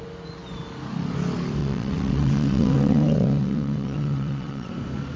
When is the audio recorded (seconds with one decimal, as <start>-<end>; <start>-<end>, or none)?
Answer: 0.0-1.6; 4.7-5.2